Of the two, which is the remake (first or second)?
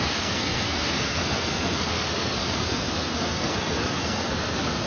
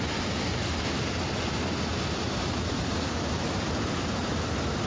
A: first